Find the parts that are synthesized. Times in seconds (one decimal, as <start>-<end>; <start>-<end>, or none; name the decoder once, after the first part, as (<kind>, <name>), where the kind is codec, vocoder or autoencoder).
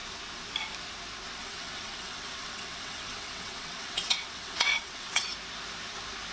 1.4-5.2 (vocoder, WaveNeXt)